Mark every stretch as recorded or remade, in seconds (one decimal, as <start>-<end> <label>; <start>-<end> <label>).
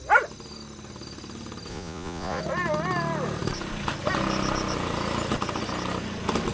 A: 0.0-1.7 recorded; 1.7-2.4 remade; 2.4-6.5 recorded